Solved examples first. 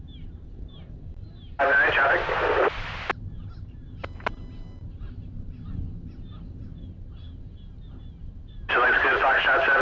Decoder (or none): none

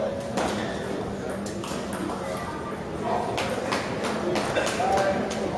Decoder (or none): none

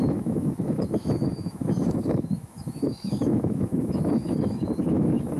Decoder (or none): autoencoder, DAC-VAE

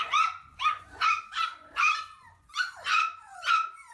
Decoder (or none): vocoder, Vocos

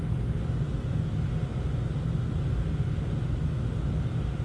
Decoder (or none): none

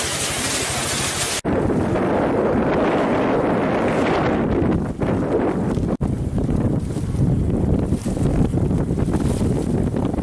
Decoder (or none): none